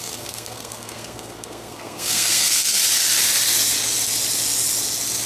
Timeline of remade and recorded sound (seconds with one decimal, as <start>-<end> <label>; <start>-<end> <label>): 0.0-2.8 remade; 2.8-5.3 recorded